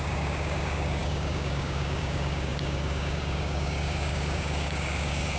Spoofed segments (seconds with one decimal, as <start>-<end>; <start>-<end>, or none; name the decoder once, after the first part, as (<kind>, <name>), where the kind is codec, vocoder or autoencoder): 0.0-5.4 (codec, DAC)